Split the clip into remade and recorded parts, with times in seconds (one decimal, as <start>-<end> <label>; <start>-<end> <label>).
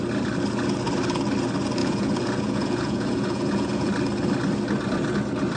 0.0-1.8 recorded; 1.8-3.9 remade; 3.9-5.6 recorded